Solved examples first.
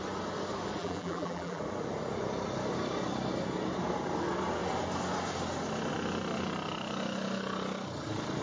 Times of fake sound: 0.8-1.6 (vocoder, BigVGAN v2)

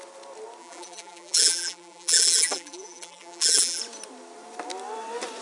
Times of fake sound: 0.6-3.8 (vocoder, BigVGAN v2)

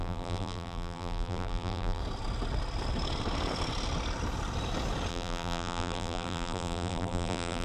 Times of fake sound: 0.0-2.0 (vocoder, BigVGAN v2); 5.1-7.6

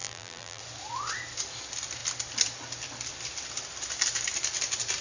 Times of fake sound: 0.0-0.6 (vocoder, BigVGAN v2)

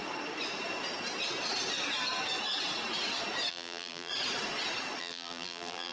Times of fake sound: 3.5-4.1 (vocoder, BigVGAN v2); 5.0-5.9

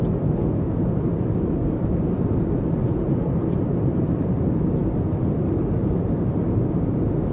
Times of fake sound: 2.8-4.5 (vocoder, BigVGAN v2); 5.8-6.4